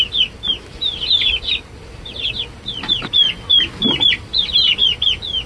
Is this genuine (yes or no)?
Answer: yes